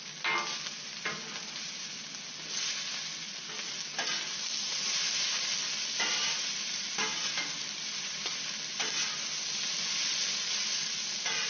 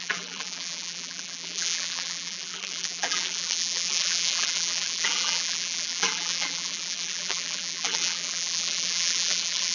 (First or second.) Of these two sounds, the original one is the first